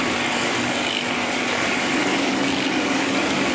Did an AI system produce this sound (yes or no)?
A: yes